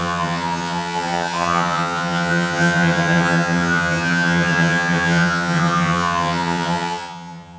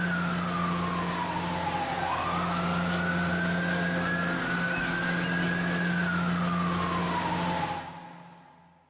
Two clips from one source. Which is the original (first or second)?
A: second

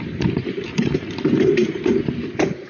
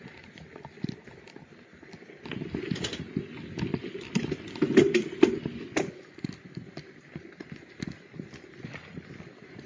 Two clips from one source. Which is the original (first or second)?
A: second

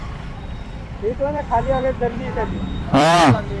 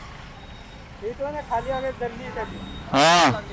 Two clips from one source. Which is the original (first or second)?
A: second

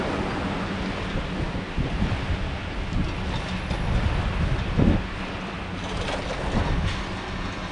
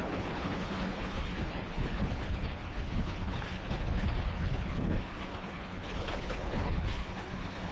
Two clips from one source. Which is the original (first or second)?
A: first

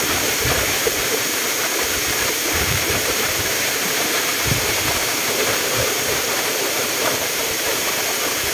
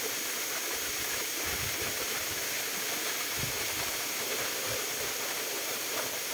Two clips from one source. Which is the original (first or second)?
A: second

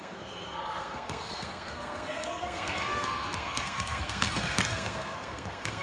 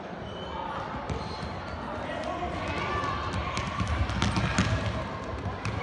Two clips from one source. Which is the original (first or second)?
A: second